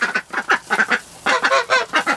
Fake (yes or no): no